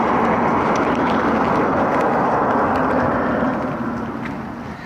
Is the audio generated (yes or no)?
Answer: no